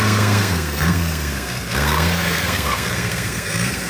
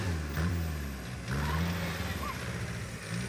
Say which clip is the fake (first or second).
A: first